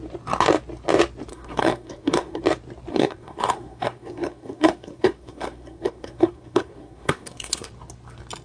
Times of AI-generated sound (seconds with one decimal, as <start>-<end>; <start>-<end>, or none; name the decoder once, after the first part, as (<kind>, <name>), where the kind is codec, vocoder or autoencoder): 1.3-2.4 (codec, SNAC); 2.9-7.7